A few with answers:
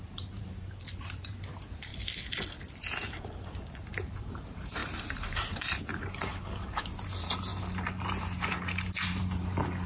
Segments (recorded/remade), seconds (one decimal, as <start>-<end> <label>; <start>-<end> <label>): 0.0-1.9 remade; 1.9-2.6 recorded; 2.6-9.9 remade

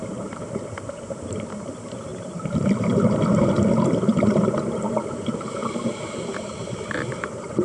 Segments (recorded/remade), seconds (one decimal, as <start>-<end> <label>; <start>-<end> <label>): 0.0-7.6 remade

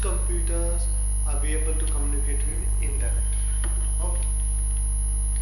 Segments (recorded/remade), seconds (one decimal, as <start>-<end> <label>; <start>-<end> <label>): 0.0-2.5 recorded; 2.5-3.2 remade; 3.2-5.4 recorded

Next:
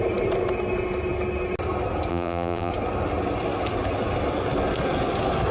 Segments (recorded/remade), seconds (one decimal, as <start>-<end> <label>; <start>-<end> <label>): 0.0-2.1 recorded; 2.1-2.7 remade; 2.7-5.5 recorded

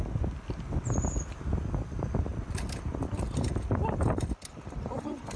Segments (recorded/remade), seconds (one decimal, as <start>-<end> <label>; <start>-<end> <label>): 0.0-2.3 recorded; 2.3-5.0 remade; 5.0-5.4 recorded

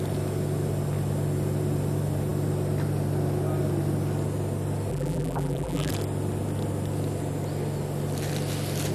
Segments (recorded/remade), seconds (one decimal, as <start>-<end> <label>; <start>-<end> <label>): 0.0-4.9 recorded; 4.9-5.9 remade; 5.9-8.9 recorded

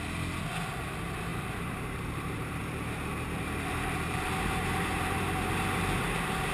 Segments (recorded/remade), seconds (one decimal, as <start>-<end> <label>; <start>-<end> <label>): 0.0-1.3 recorded; 1.3-5.2 remade; 5.2-6.5 recorded